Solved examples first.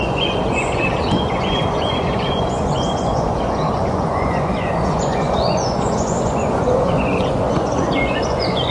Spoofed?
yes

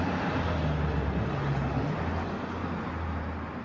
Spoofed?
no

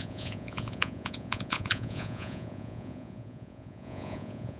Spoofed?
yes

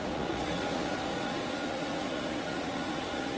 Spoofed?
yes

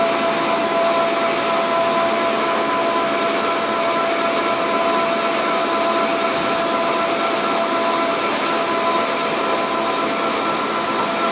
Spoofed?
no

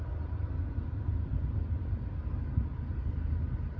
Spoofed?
no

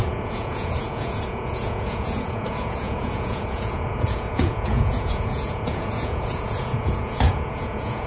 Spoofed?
yes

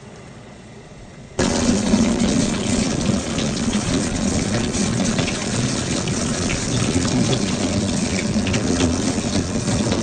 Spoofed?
yes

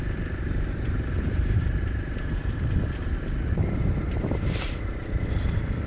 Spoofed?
no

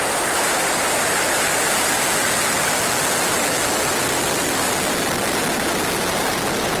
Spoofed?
no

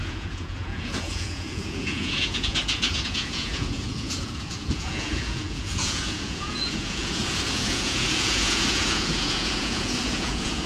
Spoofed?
yes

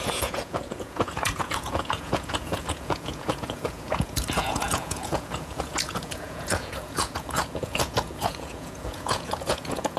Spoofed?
yes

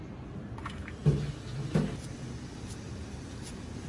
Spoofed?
no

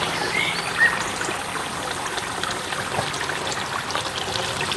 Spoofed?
no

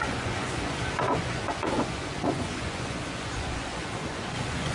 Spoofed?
yes